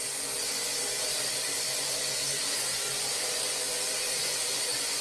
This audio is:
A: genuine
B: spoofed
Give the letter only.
B